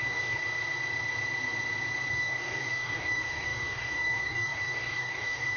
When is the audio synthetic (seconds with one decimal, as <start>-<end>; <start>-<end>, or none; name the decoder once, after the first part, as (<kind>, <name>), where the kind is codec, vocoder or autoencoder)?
0.0-0.4 (codec, DAC); 2.1-5.6